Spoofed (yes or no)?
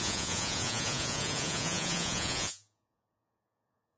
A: yes